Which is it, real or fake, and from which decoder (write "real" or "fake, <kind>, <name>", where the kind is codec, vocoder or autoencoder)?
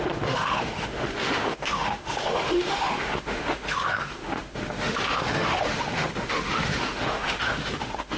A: fake, autoencoder, DAC-VAE